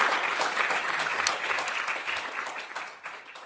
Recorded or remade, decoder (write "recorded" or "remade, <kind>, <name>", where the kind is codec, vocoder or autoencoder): recorded